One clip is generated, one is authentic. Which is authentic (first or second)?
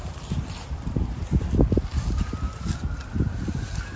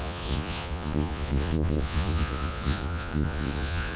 first